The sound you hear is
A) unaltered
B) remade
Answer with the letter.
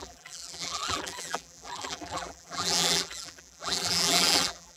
B